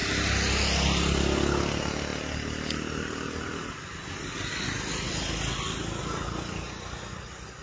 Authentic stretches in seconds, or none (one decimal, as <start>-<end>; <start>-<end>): 0.0-7.6